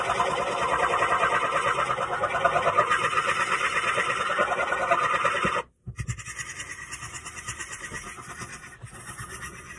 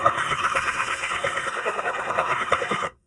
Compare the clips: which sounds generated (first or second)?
second